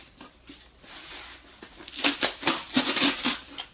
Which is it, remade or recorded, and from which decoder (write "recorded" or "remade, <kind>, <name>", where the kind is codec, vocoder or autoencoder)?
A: recorded